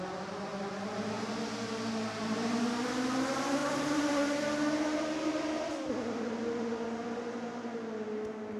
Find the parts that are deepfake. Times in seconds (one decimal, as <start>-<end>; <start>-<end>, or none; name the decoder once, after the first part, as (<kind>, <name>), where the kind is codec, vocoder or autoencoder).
none